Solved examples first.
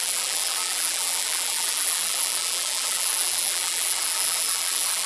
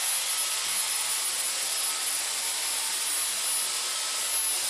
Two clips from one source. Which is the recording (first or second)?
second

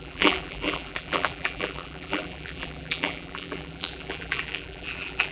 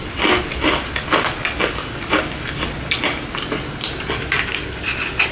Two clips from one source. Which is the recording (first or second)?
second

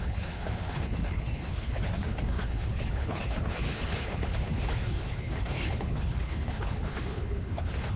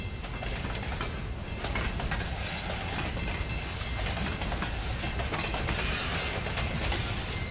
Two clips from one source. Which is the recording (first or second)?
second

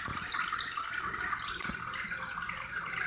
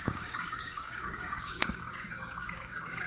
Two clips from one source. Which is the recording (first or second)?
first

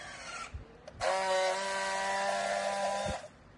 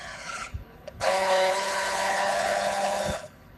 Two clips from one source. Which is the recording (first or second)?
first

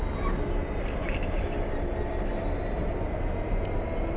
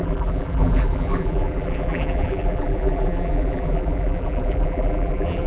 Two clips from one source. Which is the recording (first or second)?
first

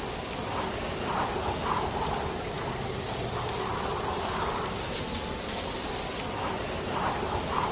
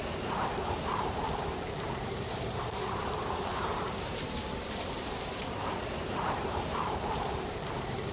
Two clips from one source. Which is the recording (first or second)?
first